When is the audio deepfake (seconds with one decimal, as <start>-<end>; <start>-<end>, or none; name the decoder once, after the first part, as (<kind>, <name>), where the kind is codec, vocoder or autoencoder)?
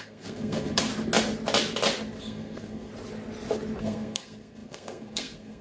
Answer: 0.0-0.9 (codec, SNAC); 2.2-2.9; 3.8-5.6